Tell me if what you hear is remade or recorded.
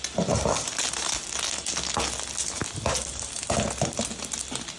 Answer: recorded